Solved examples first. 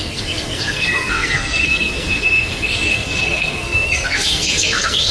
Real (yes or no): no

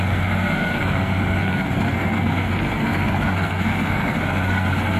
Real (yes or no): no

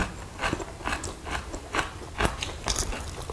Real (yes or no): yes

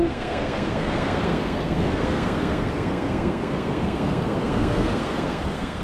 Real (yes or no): no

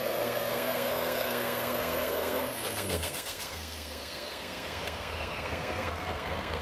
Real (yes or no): no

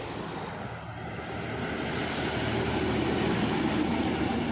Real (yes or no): yes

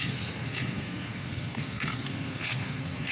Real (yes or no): no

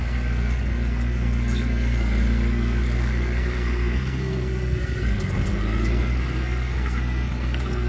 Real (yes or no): no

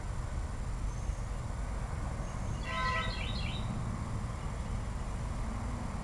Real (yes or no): yes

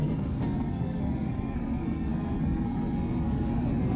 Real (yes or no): no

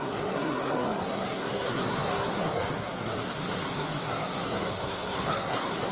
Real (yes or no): no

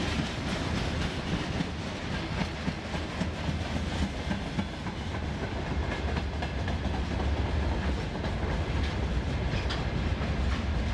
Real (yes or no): yes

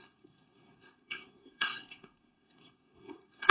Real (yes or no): no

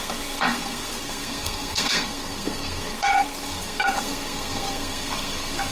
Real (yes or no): no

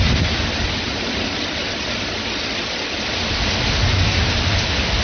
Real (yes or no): yes